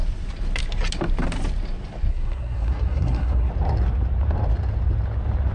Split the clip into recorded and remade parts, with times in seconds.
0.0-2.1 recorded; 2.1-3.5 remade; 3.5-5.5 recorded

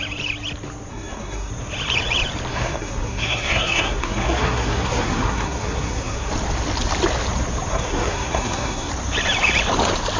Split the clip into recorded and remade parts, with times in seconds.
0.0-0.9 recorded; 0.9-1.5 remade; 1.5-2.5 recorded; 2.5-6.3 remade; 6.3-7.7 recorded; 7.7-8.9 remade; 8.9-10.2 recorded

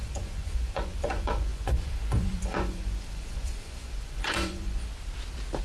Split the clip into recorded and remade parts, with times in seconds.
0.0-4.9 remade; 4.9-5.6 recorded

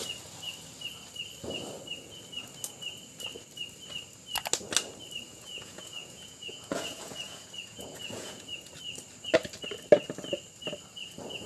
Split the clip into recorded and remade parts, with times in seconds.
0.0-5.3 recorded; 5.3-8.7 remade; 8.7-11.5 recorded